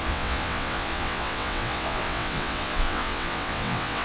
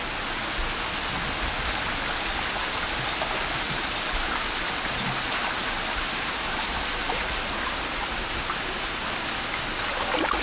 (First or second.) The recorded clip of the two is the second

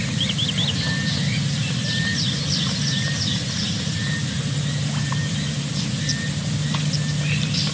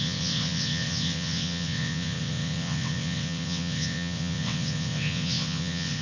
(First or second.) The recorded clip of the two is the first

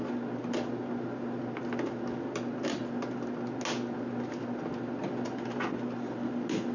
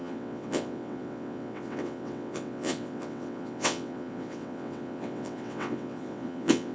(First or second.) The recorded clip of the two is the first